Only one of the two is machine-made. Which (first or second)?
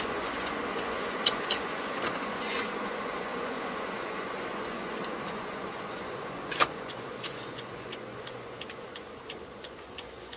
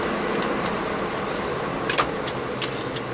first